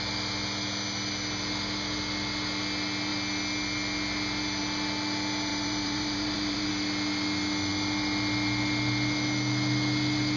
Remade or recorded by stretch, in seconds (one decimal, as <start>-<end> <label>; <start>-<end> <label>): 0.0-5.5 recorded; 5.5-6.7 remade; 6.7-10.4 recorded